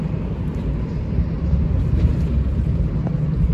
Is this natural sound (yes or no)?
yes